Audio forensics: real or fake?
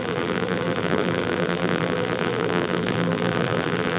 fake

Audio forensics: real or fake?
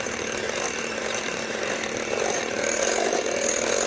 fake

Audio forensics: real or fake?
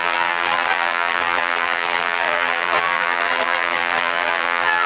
fake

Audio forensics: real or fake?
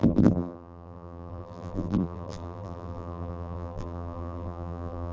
fake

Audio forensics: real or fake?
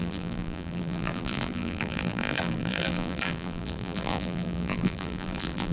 fake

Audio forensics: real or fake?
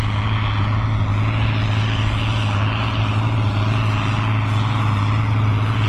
real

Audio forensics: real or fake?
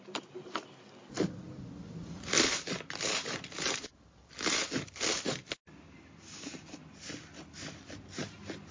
real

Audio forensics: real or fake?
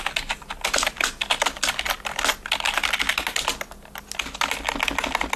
real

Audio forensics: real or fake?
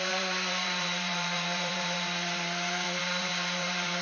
fake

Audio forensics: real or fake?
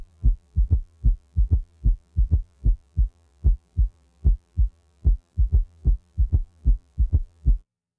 fake